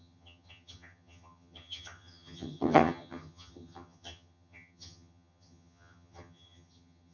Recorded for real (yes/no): no